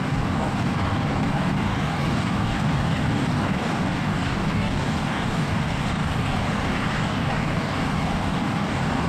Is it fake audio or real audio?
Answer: fake